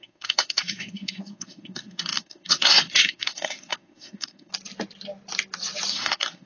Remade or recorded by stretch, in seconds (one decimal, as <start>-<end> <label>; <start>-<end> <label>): 0.0-4.5 remade; 4.5-5.9 recorded; 5.9-6.5 remade